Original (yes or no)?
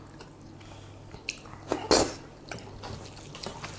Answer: yes